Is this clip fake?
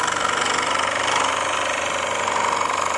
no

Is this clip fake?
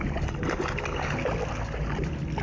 no